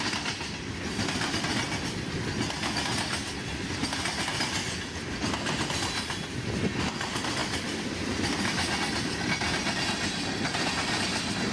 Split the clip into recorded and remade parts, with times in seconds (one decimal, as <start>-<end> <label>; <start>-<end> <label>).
0.0-11.5 recorded